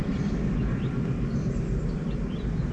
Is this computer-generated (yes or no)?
no